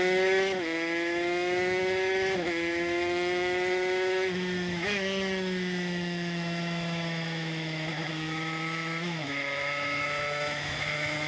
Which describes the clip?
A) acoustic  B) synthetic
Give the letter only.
B